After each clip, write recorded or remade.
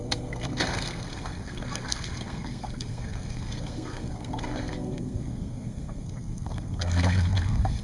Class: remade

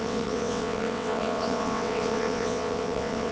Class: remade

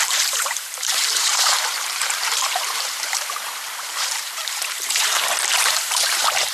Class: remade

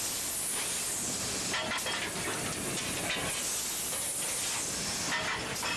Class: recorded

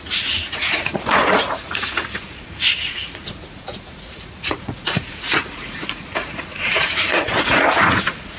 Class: remade